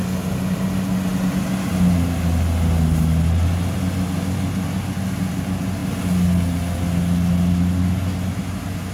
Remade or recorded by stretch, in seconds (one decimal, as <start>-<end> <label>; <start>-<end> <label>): 0.0-8.9 recorded

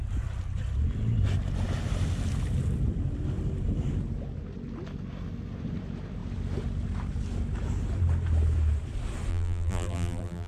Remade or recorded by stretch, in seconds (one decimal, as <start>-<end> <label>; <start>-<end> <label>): 0.0-9.3 recorded; 9.3-10.5 remade

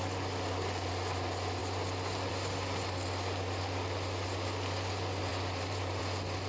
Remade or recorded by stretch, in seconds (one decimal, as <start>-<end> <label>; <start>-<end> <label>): 0.0-5.3 recorded; 5.3-6.0 remade; 6.0-6.5 recorded